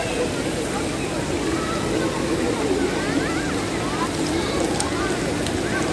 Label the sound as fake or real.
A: real